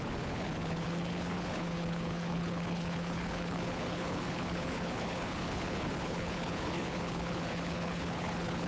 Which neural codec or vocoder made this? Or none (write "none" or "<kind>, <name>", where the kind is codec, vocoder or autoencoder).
codec, HILCodec